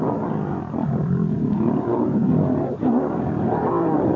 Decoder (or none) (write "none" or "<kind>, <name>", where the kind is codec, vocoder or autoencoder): none